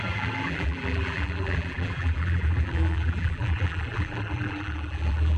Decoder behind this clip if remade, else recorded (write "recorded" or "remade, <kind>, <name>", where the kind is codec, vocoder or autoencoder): remade, vocoder, BigVGAN v2